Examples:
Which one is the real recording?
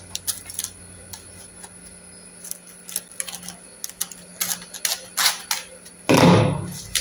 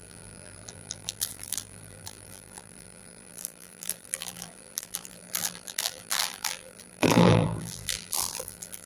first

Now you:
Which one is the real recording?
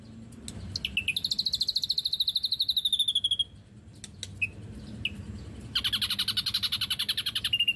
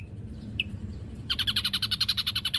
first